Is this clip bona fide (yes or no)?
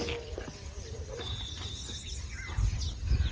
yes